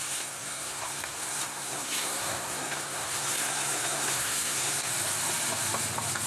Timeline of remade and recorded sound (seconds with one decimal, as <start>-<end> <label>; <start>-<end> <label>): 0.0-4.9 remade; 4.9-6.3 recorded